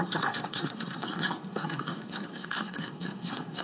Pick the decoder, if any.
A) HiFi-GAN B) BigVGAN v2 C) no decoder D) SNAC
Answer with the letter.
D